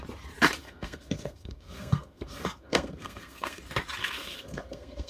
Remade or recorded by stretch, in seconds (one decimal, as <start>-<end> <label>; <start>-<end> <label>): 0.0-0.6 recorded; 0.6-3.6 remade; 3.6-4.0 recorded; 4.0-5.1 remade

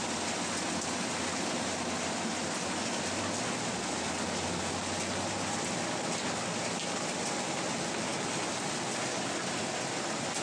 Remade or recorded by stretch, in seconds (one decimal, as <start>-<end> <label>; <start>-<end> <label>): 0.0-10.4 recorded

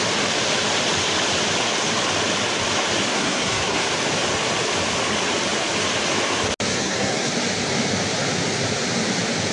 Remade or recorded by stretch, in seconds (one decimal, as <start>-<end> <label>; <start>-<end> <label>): 0.0-3.1 recorded; 3.1-3.9 remade; 3.9-6.7 recorded; 6.7-7.3 remade; 7.3-9.5 recorded

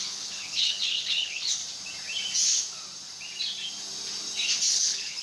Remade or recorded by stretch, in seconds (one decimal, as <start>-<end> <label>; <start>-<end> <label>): 0.0-1.6 remade; 1.6-4.7 recorded; 4.7-5.2 remade

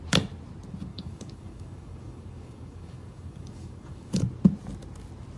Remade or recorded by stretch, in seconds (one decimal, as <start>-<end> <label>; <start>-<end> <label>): 0.0-0.9 recorded; 0.9-4.1 remade; 4.1-5.4 recorded

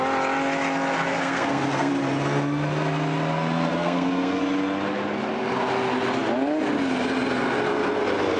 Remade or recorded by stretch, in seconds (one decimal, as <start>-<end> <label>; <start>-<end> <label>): 0.0-1.1 recorded; 1.1-1.9 remade; 1.9-3.7 recorded; 3.7-4.4 remade; 4.4-8.4 recorded

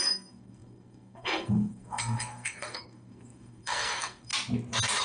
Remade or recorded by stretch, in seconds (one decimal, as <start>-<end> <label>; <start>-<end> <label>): 0.0-4.3 remade; 4.3-5.0 recorded